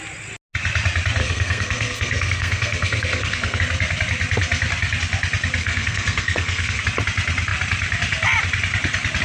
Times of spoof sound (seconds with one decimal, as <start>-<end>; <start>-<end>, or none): 1.2-3.6; 5.6-6.8